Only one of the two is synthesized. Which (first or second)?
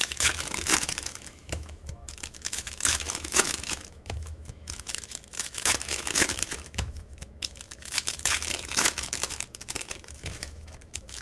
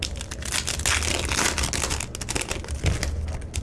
first